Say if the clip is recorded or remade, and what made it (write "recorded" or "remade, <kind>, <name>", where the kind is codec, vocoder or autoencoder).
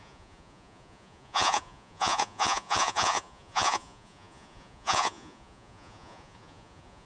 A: remade, vocoder, Vocos